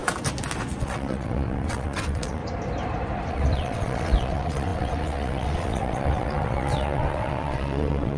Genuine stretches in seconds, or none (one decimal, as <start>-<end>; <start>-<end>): 0.0-0.8; 2.4-3.3